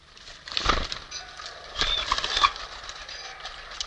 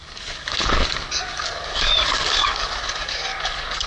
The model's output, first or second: second